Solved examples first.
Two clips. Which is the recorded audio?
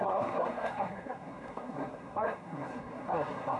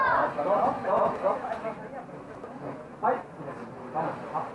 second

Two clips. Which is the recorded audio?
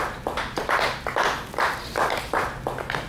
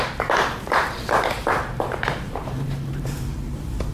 first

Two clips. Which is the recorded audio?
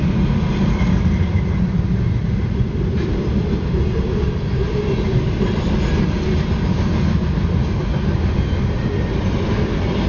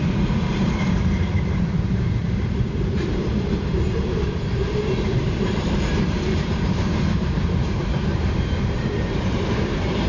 first